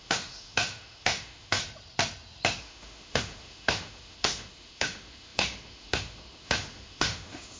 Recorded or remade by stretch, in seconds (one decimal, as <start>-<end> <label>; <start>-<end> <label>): 0.0-1.6 remade; 1.6-2.6 recorded; 2.6-7.6 remade